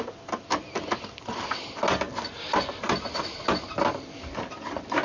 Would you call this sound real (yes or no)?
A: yes